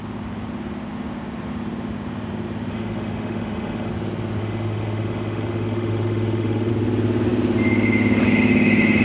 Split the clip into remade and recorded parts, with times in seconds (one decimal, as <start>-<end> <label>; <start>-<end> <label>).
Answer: 0.0-2.7 recorded; 2.7-3.9 remade; 3.9-4.4 recorded; 4.4-6.7 remade; 6.7-9.0 recorded